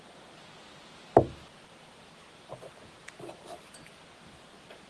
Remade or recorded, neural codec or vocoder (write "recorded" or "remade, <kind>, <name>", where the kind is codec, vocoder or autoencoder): recorded